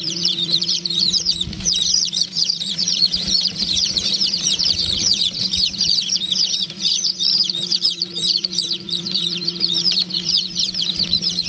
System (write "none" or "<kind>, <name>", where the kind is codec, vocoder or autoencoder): vocoder, Vocos